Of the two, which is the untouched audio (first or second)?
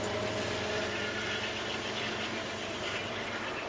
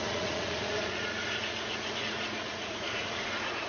first